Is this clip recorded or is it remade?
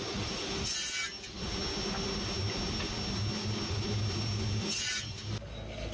recorded